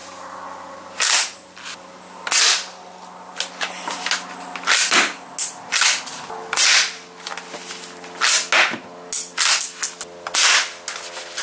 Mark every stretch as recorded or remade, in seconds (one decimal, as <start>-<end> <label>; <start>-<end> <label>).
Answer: 0.0-11.4 recorded